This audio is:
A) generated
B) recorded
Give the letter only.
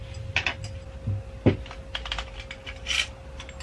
B